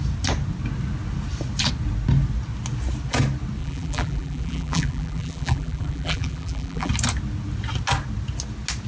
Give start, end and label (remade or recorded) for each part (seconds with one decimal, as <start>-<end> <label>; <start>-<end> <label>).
0.0-3.6 recorded; 3.6-6.9 remade; 6.9-8.9 recorded